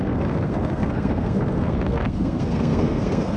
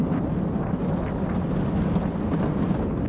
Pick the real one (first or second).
second